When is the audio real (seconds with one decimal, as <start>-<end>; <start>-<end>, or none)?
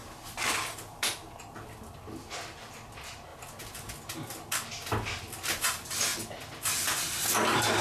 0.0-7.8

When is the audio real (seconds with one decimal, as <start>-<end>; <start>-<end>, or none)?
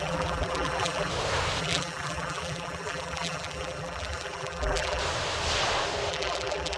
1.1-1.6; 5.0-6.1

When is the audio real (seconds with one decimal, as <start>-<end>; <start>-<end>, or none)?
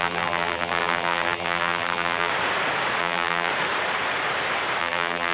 2.3-3.0; 3.5-4.8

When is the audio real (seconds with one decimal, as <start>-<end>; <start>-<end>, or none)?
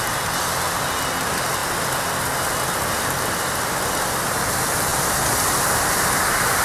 0.0-6.6